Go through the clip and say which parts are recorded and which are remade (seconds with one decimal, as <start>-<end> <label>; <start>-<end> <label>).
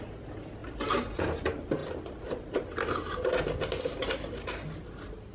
0.0-0.6 recorded; 0.6-1.2 remade; 1.2-5.3 recorded